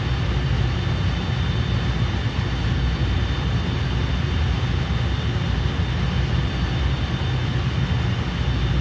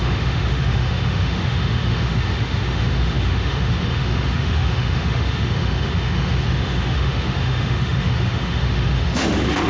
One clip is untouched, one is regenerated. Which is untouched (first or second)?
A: first